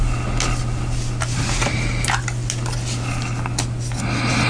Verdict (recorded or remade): recorded